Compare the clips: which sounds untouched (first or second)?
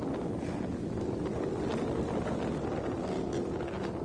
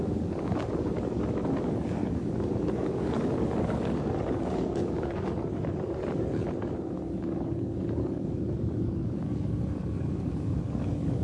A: first